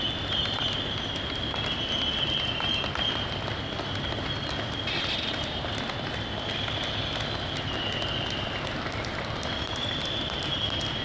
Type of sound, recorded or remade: recorded